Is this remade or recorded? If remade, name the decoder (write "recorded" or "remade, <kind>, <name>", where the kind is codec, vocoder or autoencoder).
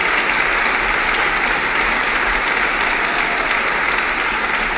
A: recorded